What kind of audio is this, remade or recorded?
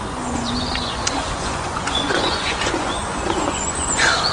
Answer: remade